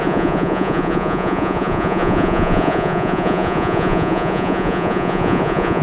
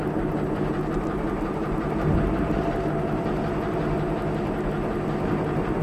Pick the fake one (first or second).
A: first